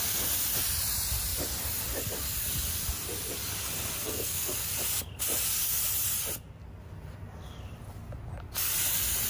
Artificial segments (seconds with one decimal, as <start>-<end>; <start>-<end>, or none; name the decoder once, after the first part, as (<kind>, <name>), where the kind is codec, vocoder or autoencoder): 4.0-4.7 (codec, SNAC)